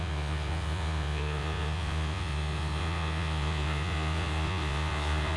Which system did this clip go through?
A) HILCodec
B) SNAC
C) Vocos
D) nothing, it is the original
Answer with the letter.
C